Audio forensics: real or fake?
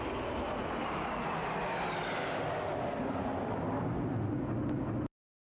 real